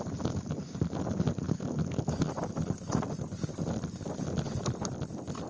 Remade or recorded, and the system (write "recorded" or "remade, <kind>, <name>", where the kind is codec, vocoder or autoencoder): recorded